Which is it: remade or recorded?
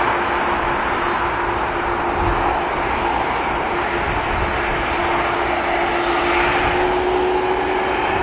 recorded